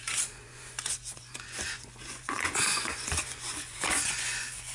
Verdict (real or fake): fake